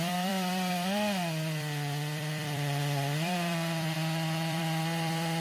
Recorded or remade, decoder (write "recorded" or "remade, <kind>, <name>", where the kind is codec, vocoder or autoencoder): remade, vocoder, BigVGAN v2